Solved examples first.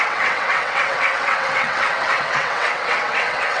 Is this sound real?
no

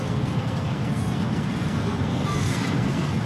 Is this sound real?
no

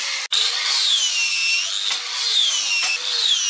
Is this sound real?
yes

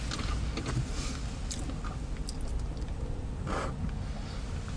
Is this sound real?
yes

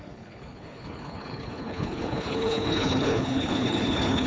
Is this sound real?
no